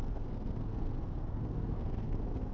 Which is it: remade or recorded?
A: remade